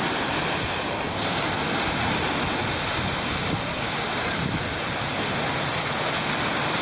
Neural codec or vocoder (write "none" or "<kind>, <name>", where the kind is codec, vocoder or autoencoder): none